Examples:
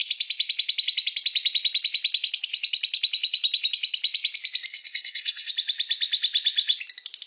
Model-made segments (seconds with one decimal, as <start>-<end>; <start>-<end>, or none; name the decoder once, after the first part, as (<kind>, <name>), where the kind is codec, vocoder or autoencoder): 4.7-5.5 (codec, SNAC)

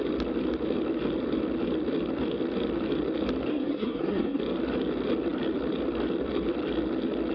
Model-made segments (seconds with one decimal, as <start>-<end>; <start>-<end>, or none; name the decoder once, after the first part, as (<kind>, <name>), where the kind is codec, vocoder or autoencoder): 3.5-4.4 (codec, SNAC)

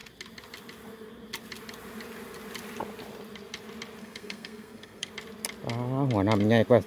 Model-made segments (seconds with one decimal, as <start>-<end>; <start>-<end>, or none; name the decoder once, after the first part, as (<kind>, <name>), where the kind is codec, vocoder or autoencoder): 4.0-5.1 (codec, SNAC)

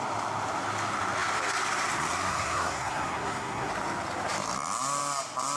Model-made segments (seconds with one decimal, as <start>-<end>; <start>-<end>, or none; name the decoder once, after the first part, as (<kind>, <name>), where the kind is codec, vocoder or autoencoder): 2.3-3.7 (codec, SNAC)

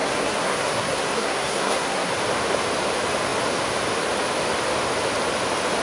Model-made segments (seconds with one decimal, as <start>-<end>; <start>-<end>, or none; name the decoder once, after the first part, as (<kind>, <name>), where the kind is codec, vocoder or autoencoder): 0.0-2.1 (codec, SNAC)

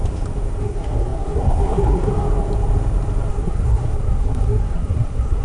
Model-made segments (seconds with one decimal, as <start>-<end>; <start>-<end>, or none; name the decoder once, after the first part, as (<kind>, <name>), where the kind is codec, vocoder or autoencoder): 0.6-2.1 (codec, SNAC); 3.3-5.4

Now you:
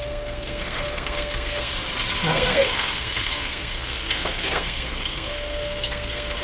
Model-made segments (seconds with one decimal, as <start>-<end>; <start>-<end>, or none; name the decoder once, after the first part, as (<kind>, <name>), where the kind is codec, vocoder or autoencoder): 0.0-1.7 (codec, SNAC); 2.3-6.4